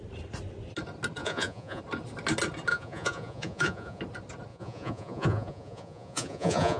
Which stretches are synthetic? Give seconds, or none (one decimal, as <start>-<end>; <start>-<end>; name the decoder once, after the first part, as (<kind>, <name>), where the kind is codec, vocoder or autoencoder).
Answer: 1.2-1.8 (vocoder, Vocos); 2.7-4.0; 4.5-6.8